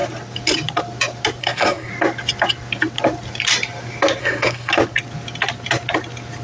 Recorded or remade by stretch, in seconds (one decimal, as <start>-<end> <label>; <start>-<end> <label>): 0.0-1.4 recorded; 1.4-1.9 remade; 1.9-4.2 recorded; 4.2-4.7 remade; 4.7-6.4 recorded